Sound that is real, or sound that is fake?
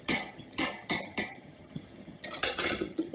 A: fake